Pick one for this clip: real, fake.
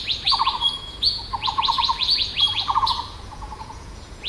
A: fake